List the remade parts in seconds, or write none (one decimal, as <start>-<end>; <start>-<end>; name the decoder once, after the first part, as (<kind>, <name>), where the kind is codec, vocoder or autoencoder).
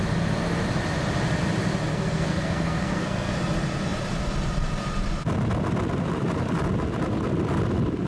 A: 1.9-3.3 (codec, SNAC)